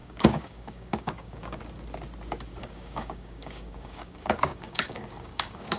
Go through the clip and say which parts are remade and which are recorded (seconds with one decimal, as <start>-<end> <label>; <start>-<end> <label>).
0.0-1.6 remade; 1.6-2.6 recorded; 2.6-5.8 remade